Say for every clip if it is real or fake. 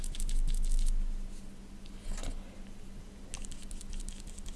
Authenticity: real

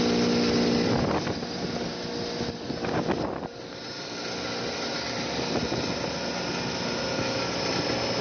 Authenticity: real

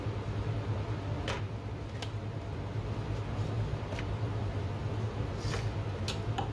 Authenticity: real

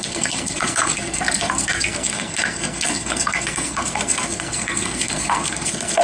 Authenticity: fake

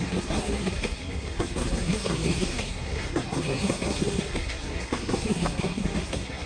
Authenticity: fake